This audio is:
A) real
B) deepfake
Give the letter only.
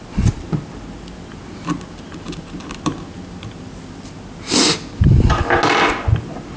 A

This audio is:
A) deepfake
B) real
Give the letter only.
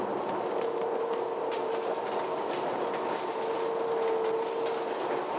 B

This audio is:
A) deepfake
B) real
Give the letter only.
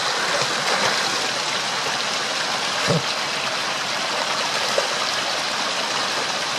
B